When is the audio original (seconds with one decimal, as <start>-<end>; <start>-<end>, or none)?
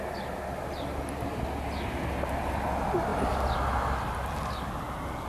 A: 0.0-5.3